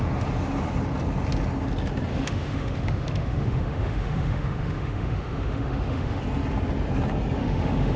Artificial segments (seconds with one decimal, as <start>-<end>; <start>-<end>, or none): 2.1-6.2; 7.4-8.0